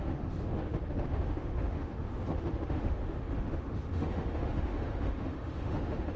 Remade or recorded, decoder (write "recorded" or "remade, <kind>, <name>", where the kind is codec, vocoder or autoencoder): remade, autoencoder, DAC-VAE